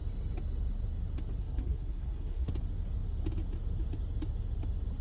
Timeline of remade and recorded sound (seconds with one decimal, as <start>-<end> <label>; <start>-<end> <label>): 0.0-1.4 recorded; 1.4-2.5 remade; 2.5-5.0 recorded